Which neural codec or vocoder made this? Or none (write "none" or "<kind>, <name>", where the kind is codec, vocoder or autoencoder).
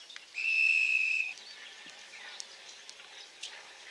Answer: none